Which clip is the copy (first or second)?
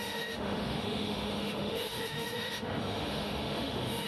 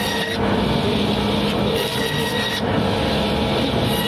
first